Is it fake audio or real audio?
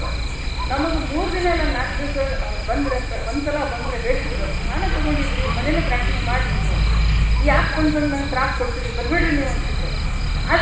real